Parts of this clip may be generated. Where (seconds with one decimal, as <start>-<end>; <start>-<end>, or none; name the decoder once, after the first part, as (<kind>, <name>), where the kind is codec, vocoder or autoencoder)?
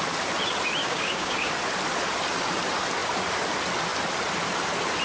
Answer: 0.8-1.5 (codec, DAC)